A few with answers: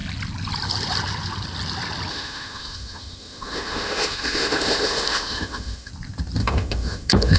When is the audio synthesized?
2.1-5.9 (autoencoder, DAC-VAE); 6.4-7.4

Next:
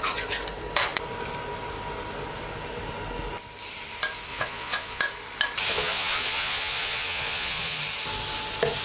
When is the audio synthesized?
4.3-5.0 (vocoder, Vocos); 5.7-7.8

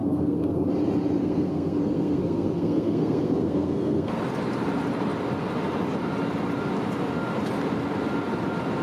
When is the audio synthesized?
0.0-0.7 (codec, SNAC); 1.2-4.2

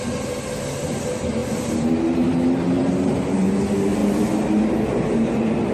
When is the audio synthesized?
none

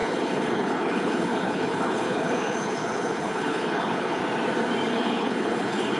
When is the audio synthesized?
0.0-4.2 (codec, HILCodec); 4.9-6.0